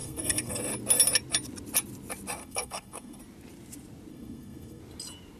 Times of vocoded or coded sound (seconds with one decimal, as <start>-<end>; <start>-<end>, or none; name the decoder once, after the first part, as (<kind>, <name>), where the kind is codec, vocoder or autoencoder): 0.0-0.6 (codec, SNAC); 2.4-3.2; 4.1-4.8